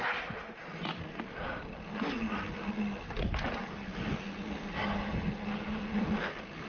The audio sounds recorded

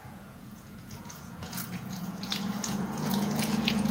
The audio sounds remade